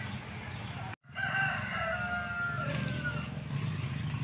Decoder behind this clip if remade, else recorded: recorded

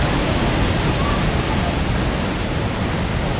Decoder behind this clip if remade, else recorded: recorded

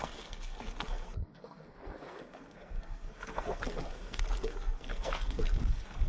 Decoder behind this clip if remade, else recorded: remade, codec, SNAC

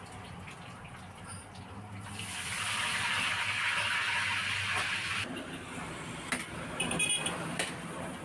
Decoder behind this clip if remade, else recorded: recorded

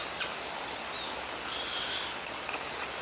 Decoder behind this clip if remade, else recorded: recorded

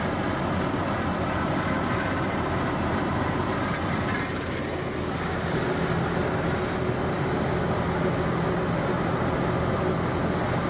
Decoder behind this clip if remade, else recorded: recorded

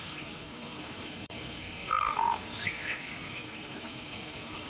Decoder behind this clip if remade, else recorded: remade, codec, SNAC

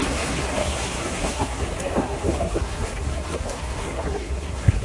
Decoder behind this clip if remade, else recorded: remade, codec, SNAC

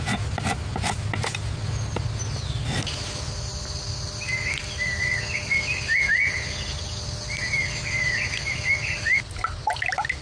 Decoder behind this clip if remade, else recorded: recorded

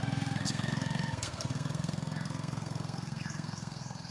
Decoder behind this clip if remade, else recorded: remade, codec, SNAC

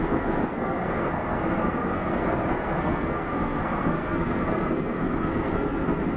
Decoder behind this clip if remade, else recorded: remade, codec, SNAC